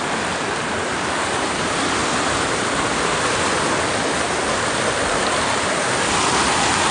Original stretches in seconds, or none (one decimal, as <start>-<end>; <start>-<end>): 0.0-6.9